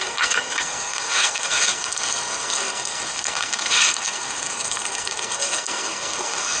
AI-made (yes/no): yes